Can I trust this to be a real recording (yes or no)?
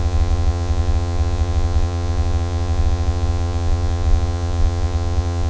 no